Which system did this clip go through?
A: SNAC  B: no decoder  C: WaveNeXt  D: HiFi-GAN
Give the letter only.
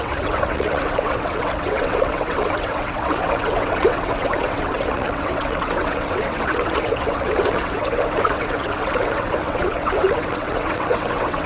C